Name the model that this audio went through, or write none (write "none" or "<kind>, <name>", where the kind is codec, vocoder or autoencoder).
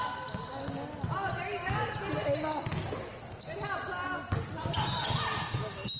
none